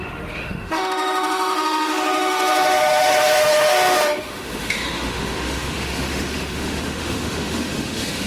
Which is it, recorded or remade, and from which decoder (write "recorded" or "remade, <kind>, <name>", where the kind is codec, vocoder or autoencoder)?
remade, autoencoder, DAC-VAE